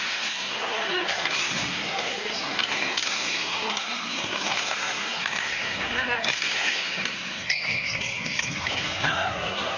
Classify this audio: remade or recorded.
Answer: remade